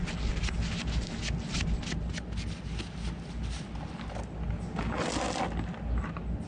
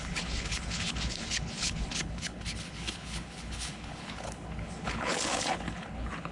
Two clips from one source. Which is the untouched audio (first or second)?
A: first